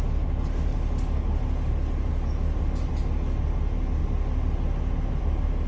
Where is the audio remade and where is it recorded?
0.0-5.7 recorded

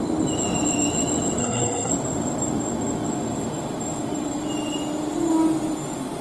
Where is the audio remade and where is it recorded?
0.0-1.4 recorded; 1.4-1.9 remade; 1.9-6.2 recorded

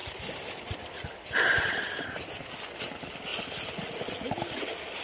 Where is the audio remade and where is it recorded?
0.0-3.3 remade; 3.3-4.4 recorded; 4.4-5.0 remade